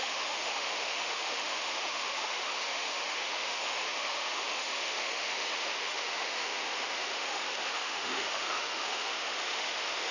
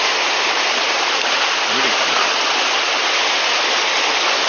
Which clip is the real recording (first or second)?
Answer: second